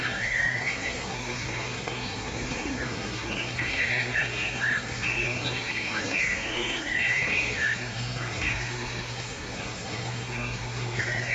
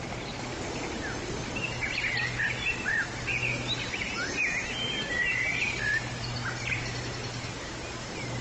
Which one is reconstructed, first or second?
first